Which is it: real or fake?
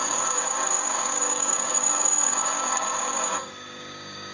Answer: fake